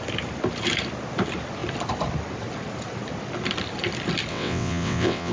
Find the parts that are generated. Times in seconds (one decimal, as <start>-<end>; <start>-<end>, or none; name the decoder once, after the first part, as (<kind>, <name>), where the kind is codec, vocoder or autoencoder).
4.3-5.3 (vocoder, WaveNeXt)